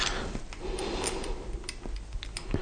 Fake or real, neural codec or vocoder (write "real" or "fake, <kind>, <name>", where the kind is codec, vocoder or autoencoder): real